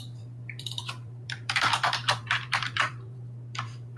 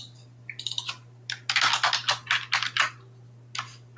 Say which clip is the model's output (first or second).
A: first